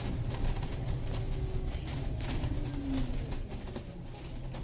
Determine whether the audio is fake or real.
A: real